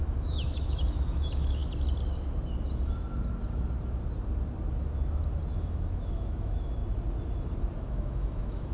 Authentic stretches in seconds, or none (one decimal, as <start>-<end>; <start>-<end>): 1.6-5.6; 6.8-7.8